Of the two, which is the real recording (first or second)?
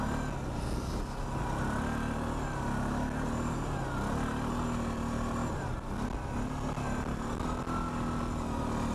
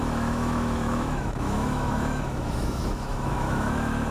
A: first